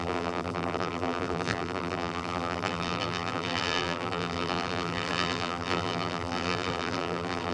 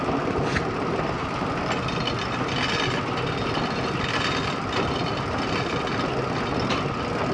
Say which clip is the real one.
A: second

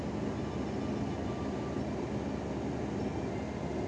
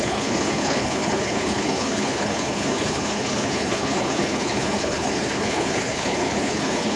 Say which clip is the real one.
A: first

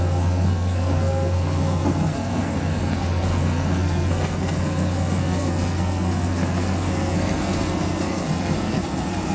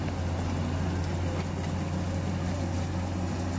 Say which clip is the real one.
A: second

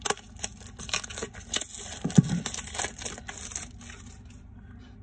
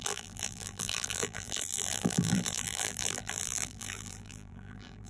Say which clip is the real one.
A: first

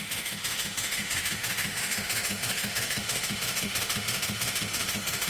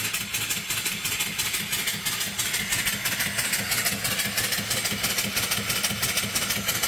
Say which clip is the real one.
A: second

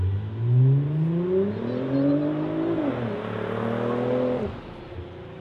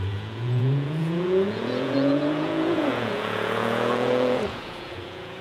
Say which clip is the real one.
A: first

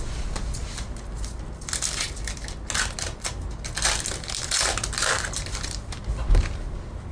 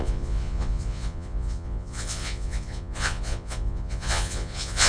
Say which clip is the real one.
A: first